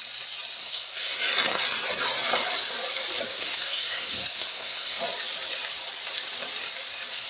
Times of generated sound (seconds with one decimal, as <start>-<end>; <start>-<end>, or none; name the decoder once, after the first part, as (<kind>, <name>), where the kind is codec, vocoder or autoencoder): 0.6-1.2 (codec, SNAC); 3.3-5.0